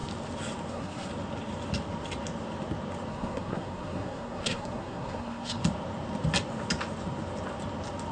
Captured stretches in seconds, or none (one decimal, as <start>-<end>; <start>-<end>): 0.0-0.7; 1.1-3.1; 5.6-8.1